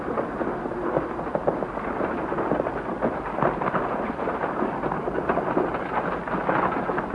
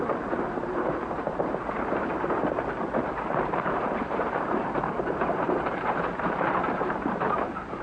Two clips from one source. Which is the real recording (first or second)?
first